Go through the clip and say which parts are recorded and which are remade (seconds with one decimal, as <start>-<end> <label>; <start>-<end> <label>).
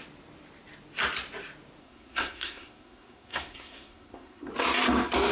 0.0-1.8 recorded; 1.8-4.5 remade; 4.5-5.3 recorded